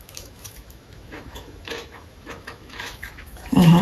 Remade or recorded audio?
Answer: remade